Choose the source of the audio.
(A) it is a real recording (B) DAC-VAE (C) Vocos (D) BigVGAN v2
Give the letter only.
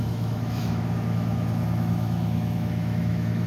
B